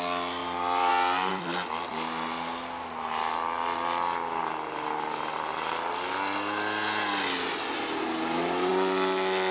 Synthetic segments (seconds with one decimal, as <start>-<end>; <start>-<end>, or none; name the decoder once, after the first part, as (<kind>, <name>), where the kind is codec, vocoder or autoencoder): 0.4-0.9 (vocoder, BigVGAN v2); 1.3-1.9; 5.5-6.1